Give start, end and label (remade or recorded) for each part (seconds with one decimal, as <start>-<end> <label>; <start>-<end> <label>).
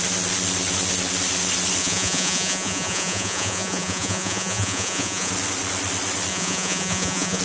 0.0-1.8 recorded; 1.8-5.3 remade; 5.3-6.3 recorded; 6.3-7.4 remade